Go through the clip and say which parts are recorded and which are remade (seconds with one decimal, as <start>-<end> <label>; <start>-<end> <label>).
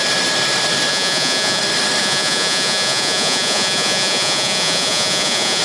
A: 0.0-0.9 recorded; 0.9-1.6 remade; 1.6-2.0 recorded; 2.0-5.6 remade